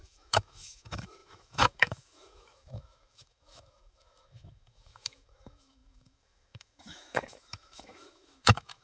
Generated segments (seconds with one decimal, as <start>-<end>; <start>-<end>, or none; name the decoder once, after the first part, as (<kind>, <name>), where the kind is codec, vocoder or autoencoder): 0.0-8.8 (autoencoder, DAC-VAE)